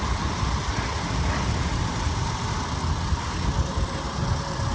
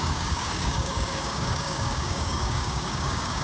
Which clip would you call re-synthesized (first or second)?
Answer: second